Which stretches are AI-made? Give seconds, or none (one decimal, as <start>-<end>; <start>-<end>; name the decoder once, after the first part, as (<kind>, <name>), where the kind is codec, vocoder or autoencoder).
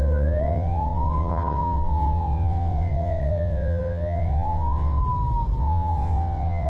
0.0-5.0 (vocoder, WaveNeXt); 5.6-6.7